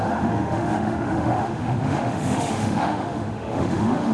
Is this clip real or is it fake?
fake